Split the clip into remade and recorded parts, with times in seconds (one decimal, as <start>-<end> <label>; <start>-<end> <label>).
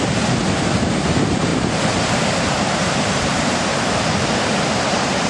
0.0-1.5 remade; 1.5-2.4 recorded; 2.4-3.7 remade; 3.7-4.4 recorded; 4.4-5.3 remade